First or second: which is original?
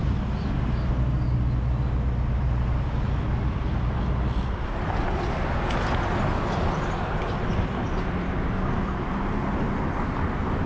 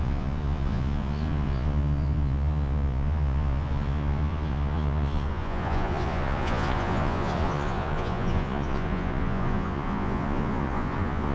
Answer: first